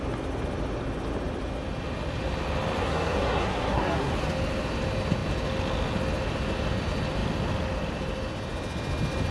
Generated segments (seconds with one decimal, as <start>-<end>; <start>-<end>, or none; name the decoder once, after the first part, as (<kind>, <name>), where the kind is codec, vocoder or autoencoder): 2.8-4.1 (codec, SNAC)